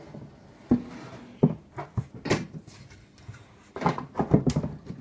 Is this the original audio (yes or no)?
yes